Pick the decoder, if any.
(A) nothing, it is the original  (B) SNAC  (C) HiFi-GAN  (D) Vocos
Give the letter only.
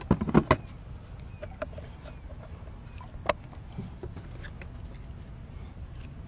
A